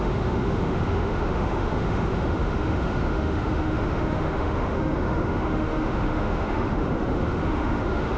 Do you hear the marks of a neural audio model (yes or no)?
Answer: yes